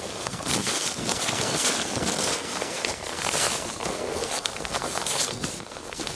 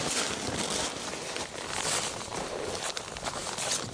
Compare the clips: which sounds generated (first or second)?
first